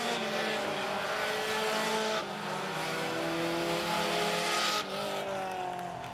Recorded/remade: recorded